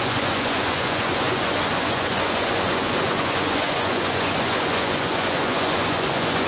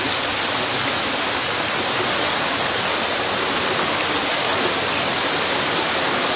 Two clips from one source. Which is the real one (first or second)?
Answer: second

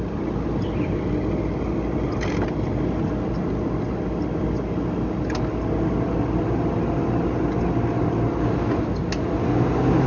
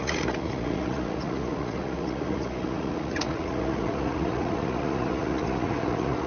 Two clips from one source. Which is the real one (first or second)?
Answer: first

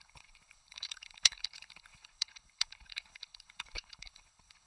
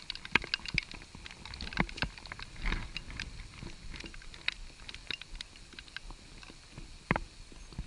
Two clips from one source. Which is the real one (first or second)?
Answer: second